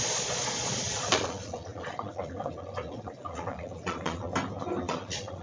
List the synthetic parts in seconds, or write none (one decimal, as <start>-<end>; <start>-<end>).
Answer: 0.0-4.3; 4.8-5.4